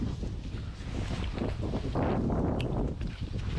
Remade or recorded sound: recorded